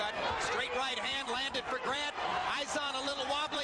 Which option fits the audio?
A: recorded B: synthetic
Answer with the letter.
B